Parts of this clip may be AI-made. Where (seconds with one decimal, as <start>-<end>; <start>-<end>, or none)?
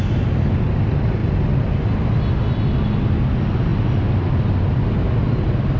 none